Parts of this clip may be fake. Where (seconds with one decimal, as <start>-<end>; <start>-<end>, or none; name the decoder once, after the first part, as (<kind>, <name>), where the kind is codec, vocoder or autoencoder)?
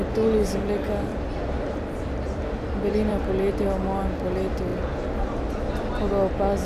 1.1-3.2 (vocoder, BigVGAN v2)